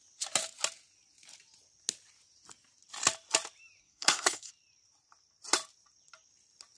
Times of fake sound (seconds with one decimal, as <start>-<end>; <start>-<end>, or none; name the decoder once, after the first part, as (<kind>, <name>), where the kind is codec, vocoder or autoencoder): 3.8-4.5 (codec, SNAC)